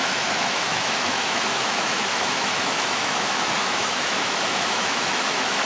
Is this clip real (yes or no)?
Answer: no